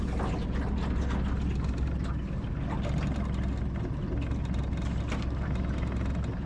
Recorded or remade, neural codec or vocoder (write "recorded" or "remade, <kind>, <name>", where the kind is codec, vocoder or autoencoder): recorded